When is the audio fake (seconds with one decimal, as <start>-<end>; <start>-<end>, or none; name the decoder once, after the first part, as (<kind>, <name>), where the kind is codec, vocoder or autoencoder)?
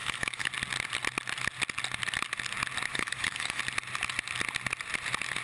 0.0-0.5 (autoencoder, DAC-VAE); 2.9-3.6